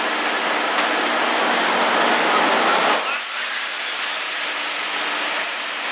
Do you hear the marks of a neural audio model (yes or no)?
no